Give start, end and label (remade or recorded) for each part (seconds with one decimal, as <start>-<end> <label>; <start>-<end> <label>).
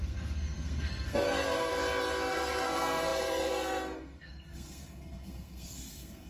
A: 0.0-1.7 remade; 1.7-2.3 recorded; 2.3-6.3 remade